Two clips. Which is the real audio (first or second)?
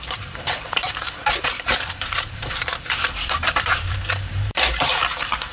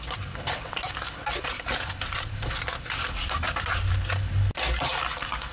second